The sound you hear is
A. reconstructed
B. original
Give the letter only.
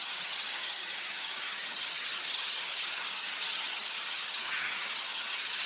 A